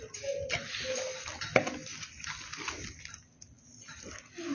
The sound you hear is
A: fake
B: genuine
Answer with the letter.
B